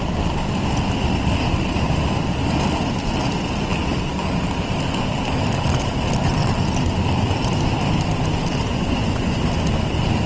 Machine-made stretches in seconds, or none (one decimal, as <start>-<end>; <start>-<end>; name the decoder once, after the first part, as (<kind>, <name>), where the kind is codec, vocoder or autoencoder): 8.7-9.4 (vocoder, Vocos)